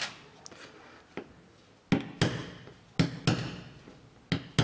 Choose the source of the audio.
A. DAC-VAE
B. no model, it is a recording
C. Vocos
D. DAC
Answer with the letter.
B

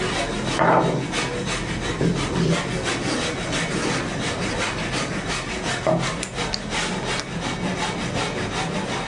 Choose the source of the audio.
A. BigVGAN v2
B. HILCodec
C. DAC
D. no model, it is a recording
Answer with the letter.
D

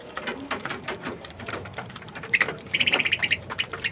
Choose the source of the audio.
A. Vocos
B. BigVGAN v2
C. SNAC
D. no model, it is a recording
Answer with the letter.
B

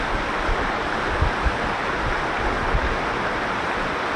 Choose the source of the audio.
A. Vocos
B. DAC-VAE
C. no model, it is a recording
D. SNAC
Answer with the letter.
C